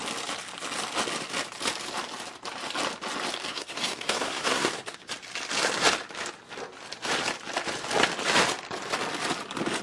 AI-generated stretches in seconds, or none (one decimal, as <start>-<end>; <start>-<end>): 3.5-5.0